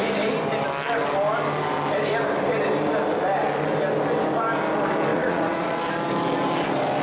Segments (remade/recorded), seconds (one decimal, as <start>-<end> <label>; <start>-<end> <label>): 0.0-5.1 recorded; 5.1-5.8 remade; 5.8-7.0 recorded